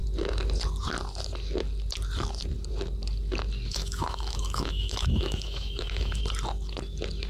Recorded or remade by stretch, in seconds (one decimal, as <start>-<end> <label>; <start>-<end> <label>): 0.0-3.7 recorded; 3.7-6.2 remade; 6.2-7.3 recorded